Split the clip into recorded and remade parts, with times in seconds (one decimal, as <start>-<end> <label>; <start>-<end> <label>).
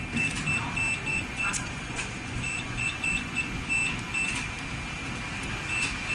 0.0-1.1 recorded; 1.1-3.7 remade; 3.7-6.1 recorded